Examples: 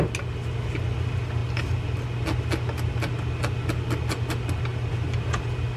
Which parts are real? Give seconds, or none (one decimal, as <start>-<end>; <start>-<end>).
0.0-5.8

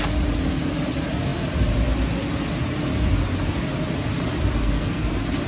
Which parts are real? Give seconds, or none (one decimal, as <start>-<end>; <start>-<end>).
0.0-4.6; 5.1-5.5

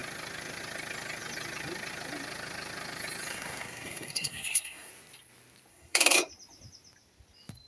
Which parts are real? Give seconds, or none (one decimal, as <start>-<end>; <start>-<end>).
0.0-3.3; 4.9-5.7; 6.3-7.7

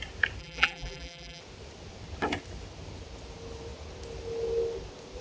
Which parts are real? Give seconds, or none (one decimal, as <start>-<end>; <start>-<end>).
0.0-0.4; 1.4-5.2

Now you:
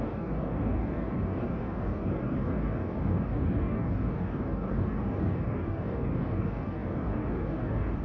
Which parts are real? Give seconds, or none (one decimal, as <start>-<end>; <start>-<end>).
none

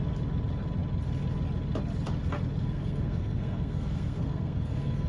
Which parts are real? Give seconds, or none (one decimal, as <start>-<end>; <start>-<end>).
0.0-2.6

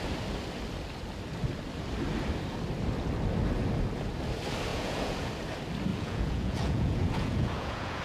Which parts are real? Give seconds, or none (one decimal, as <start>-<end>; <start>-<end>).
0.0-4.7; 5.3-5.9

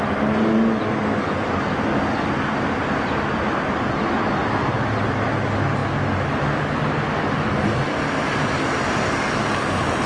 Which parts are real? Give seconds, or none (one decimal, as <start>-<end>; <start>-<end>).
0.0-4.4; 5.3-10.1